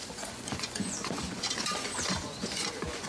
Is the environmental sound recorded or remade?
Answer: remade